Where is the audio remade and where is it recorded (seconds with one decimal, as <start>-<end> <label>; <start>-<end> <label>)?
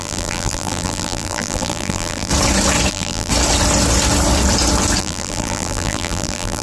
0.0-2.3 remade; 2.3-2.9 recorded; 2.9-3.3 remade; 3.3-5.0 recorded; 5.0-6.6 remade